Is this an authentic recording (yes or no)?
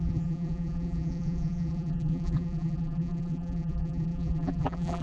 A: no